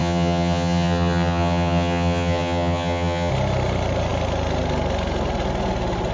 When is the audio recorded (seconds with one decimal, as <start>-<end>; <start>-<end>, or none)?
3.3-6.1